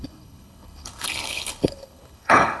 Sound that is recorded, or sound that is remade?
remade